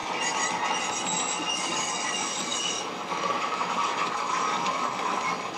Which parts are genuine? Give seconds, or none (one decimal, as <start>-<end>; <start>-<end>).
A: 0.0-1.5